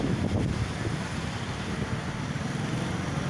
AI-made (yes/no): no